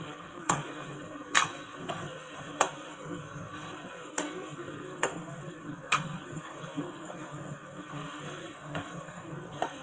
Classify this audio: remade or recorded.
remade